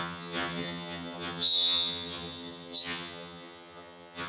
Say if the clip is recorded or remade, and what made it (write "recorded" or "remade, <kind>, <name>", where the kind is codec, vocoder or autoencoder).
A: remade, vocoder, HiFi-GAN